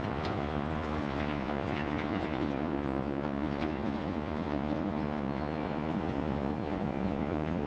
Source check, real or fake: fake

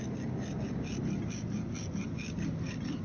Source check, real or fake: real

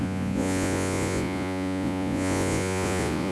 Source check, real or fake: fake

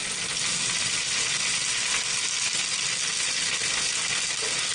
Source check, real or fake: real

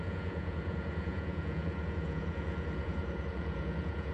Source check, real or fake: fake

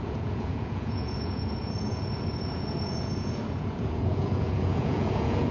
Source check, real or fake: fake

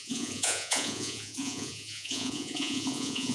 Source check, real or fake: fake